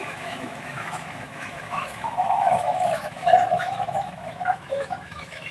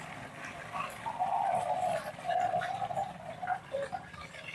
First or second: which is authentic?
second